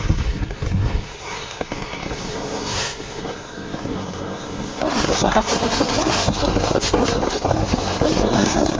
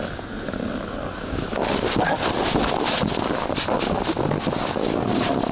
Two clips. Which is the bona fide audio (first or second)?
second